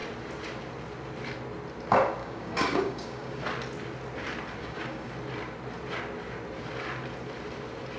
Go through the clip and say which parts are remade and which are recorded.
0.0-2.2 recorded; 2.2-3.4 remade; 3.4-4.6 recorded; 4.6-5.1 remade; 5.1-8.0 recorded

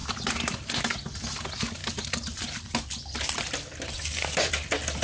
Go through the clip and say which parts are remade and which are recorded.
0.0-5.0 recorded

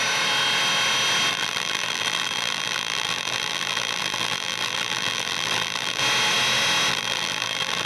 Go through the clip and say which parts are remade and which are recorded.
0.0-1.3 recorded; 1.3-6.0 remade; 6.0-6.9 recorded; 6.9-7.9 remade

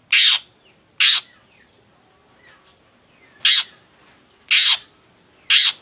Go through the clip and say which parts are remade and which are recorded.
0.0-5.8 recorded

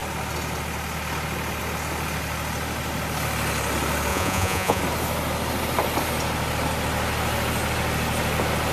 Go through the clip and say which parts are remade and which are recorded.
0.0-4.1 recorded; 4.1-4.8 remade; 4.8-8.7 recorded